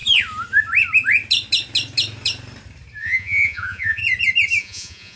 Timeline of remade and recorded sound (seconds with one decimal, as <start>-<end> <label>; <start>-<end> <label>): 0.0-3.0 recorded; 3.0-4.0 remade; 4.0-4.6 recorded; 4.6-5.2 remade